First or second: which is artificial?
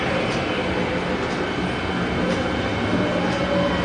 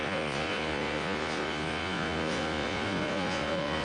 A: second